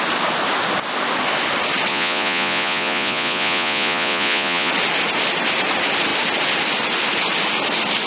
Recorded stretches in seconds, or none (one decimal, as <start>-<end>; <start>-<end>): 0.0-1.9; 4.7-8.1